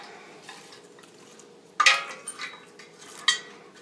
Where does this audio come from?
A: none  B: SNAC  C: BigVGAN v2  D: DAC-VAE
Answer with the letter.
A